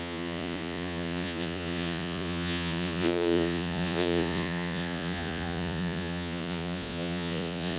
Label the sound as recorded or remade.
remade